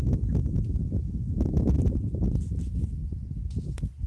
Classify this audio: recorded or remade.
recorded